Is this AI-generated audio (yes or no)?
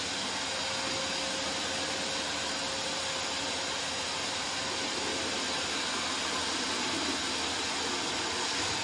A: no